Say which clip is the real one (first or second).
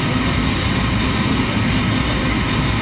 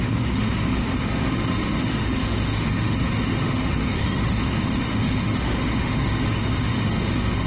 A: first